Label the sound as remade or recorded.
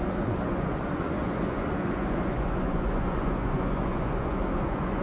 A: remade